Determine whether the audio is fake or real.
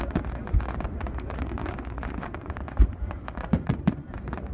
fake